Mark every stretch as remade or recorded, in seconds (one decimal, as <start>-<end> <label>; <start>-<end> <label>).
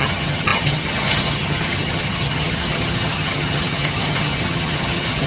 0.0-5.3 remade